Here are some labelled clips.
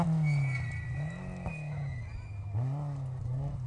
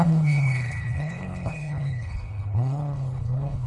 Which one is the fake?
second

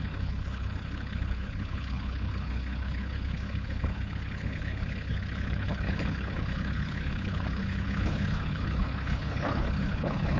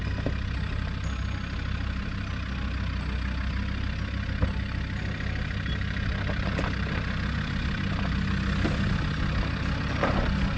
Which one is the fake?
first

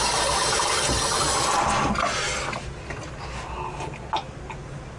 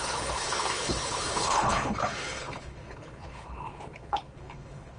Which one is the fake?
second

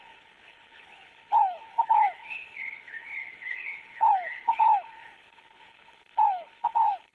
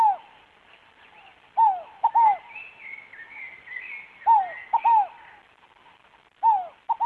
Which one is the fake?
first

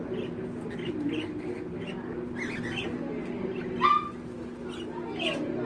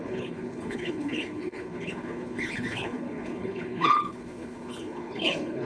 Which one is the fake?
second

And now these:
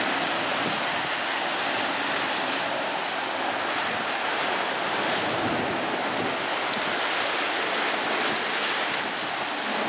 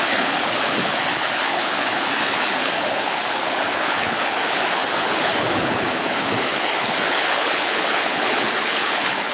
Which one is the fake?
second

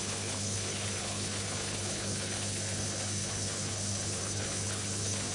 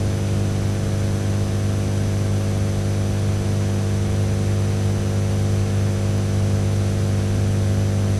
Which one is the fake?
first